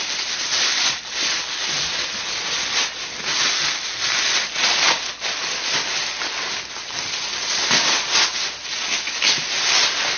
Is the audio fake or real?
real